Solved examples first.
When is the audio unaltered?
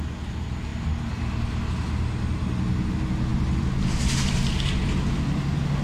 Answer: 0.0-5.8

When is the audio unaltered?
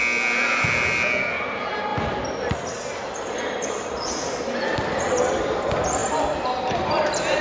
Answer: 0.0-1.2